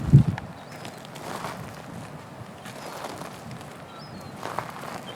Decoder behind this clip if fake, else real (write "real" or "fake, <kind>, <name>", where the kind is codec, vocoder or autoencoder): real